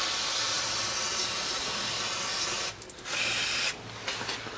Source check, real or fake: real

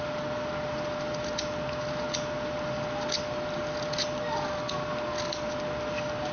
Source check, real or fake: real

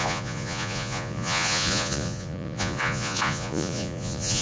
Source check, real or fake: fake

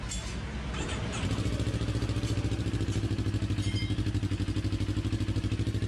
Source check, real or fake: real